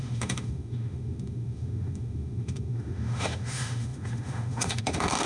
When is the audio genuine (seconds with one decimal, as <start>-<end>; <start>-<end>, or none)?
none